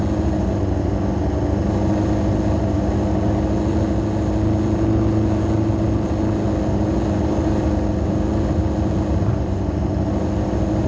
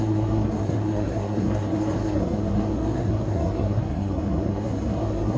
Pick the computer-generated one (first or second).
second